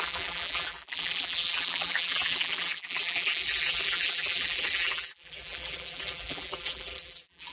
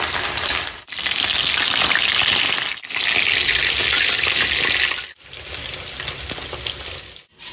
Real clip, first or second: second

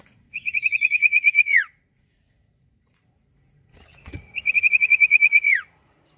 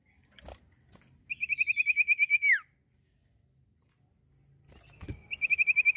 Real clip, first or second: second